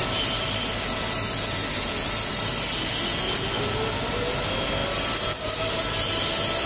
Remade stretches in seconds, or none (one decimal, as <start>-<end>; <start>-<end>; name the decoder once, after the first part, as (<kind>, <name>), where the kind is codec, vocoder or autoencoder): none